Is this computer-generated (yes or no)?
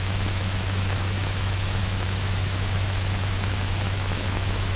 yes